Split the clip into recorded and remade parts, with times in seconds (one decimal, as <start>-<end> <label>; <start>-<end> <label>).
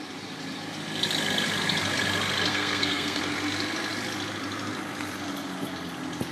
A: 0.0-2.5 recorded; 2.5-3.2 remade; 3.2-6.3 recorded